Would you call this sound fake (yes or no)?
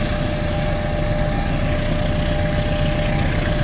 no